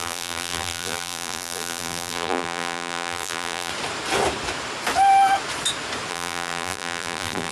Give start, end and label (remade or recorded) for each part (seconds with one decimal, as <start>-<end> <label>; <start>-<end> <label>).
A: 0.0-3.7 remade; 3.7-6.1 recorded; 6.1-7.5 remade